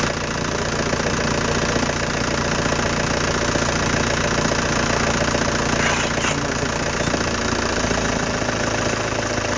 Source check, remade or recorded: recorded